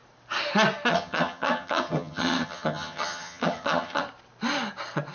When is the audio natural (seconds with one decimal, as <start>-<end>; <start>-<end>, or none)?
0.0-0.9; 4.0-5.1